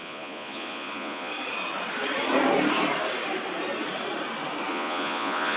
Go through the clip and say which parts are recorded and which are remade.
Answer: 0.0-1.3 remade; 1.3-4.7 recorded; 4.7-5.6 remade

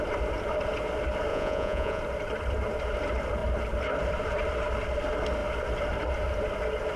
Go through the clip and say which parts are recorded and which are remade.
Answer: 0.0-1.3 recorded; 1.3-2.0 remade; 2.0-7.0 recorded

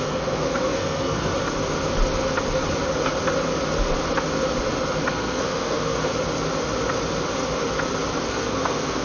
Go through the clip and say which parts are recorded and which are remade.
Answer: 0.0-1.3 remade; 1.3-5.1 recorded; 5.1-6.1 remade; 6.1-8.3 recorded; 8.3-9.0 remade

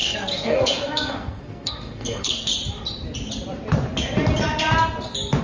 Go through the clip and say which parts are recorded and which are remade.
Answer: 0.0-2.5 remade; 2.5-5.4 recorded

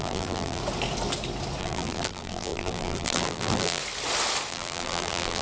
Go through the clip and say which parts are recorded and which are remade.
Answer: 0.0-0.6 remade; 0.6-1.6 recorded; 1.6-3.8 remade; 3.8-4.5 recorded; 4.5-5.4 remade

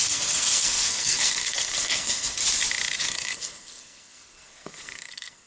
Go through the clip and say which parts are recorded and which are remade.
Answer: 0.0-2.4 remade; 2.4-3.0 recorded; 3.0-5.5 remade

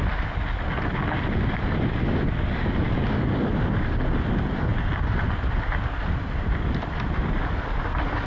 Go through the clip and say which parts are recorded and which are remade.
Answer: 0.0-8.3 recorded